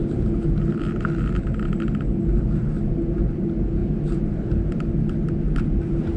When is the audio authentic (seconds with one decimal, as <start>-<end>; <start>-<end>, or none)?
0.0-6.2